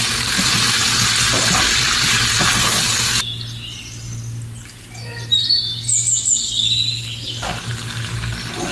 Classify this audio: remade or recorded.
recorded